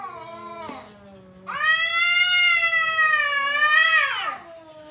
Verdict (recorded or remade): recorded